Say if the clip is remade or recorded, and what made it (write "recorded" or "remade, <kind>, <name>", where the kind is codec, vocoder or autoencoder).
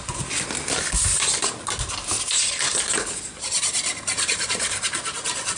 recorded